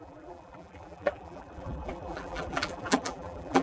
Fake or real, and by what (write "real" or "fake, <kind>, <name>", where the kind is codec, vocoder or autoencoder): fake, vocoder, BigVGAN v2